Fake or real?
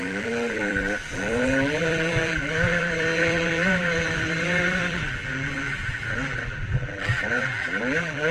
fake